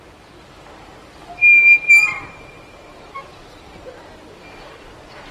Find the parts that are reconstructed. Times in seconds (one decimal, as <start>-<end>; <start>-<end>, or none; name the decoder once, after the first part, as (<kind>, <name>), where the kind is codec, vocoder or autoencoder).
0.0-1.4 (vocoder, BigVGAN v2); 2.3-5.3